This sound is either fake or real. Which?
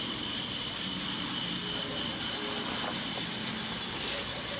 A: real